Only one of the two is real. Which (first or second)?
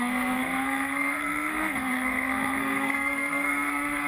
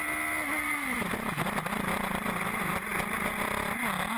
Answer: second